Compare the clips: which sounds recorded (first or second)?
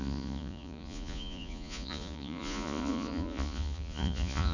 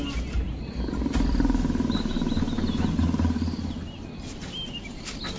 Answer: second